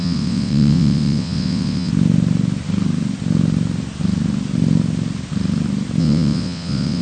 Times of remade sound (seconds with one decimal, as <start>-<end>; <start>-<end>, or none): 0.0-1.9; 6.0-7.0